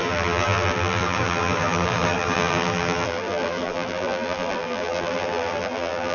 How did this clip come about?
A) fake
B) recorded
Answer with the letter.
A